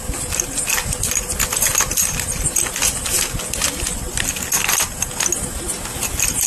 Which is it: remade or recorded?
recorded